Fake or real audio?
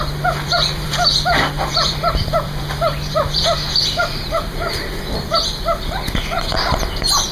fake